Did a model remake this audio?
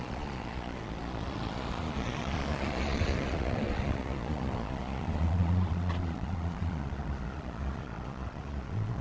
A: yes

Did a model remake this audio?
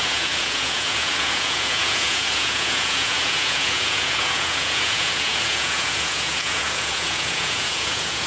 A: yes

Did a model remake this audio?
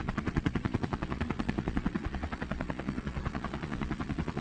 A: yes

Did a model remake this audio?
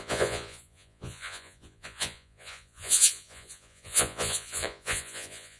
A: yes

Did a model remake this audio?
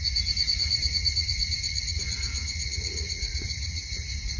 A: yes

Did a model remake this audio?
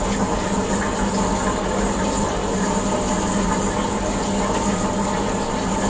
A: no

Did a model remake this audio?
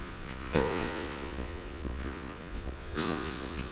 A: yes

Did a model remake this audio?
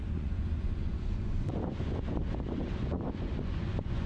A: yes